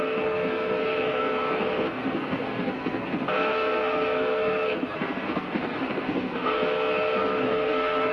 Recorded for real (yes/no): no